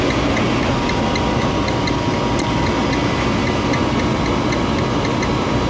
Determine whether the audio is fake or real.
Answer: real